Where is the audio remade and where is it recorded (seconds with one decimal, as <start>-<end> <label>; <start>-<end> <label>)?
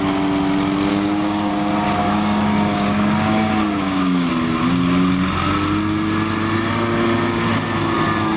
0.0-0.9 recorded; 0.9-1.5 remade; 1.5-2.0 recorded; 2.0-4.3 remade; 4.3-8.4 recorded